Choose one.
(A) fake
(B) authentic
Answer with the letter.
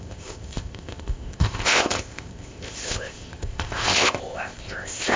A